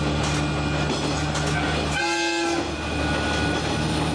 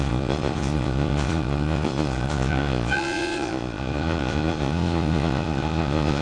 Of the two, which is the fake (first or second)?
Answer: second